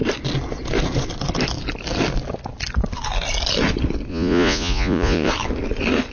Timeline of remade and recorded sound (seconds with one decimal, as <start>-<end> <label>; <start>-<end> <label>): 0.0-4.1 recorded; 4.1-5.3 remade; 5.3-6.1 recorded